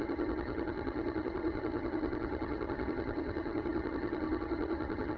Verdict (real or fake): fake